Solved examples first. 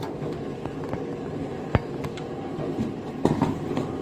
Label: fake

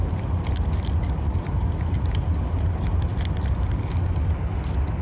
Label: real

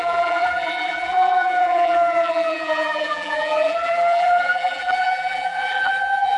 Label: fake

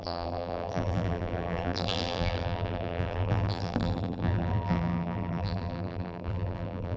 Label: fake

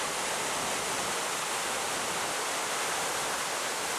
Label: fake